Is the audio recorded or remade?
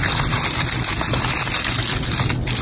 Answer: remade